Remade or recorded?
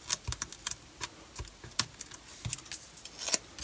recorded